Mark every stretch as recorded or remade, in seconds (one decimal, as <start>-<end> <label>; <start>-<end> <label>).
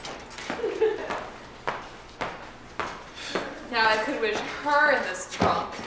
0.0-5.9 recorded